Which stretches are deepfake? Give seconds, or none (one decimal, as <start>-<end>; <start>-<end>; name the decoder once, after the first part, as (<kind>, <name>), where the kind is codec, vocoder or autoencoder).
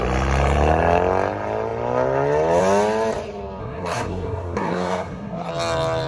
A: 3.6-5.5 (codec, SNAC)